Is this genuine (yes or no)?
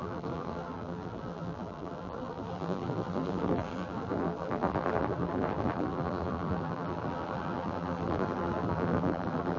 no